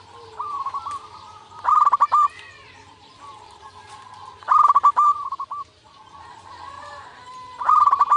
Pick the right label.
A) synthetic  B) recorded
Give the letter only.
A